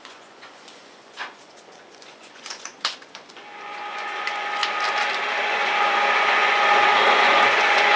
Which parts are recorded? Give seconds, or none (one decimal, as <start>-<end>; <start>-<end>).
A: 4.6-5.4